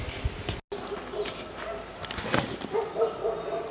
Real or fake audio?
real